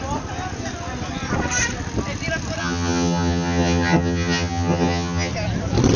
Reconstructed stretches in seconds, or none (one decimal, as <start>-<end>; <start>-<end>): 2.6-5.3